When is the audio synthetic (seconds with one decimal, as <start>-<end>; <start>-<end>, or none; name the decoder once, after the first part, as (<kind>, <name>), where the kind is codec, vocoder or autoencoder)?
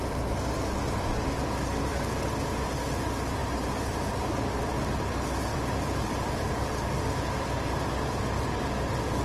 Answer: 3.4-4.6 (vocoder, BigVGAN v2); 5.5-6.5